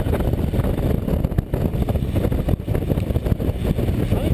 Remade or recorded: recorded